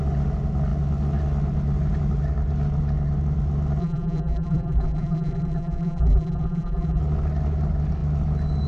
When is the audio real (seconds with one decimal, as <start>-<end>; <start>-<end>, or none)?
0.0-3.8; 7.0-8.7